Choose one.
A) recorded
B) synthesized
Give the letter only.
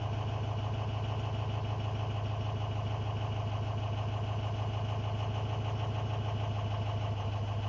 A